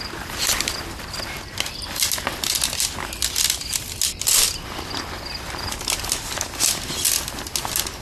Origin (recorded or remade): recorded